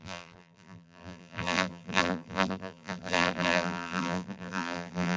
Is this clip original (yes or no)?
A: no